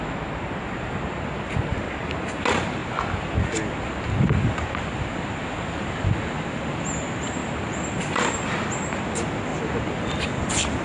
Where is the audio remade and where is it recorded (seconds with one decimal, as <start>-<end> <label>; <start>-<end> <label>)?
0.0-1.7 recorded; 1.7-2.4 remade; 2.4-10.8 recorded